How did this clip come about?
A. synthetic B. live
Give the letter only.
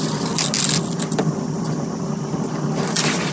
B